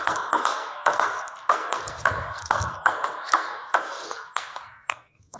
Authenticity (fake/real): fake